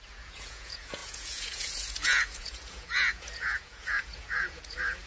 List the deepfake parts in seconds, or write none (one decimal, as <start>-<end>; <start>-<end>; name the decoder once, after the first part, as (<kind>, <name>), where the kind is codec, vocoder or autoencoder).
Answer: 0.0-5.1 (vocoder, Vocos)